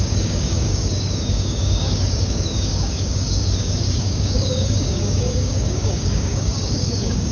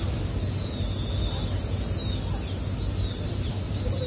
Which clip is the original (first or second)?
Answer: second